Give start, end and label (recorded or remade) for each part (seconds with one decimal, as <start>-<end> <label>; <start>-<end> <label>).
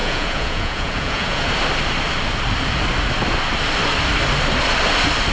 0.0-1.5 remade; 1.5-5.3 recorded